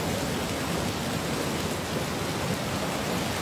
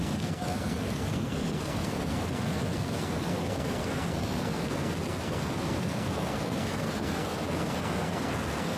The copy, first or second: second